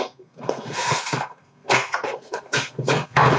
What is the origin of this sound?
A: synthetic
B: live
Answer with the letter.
A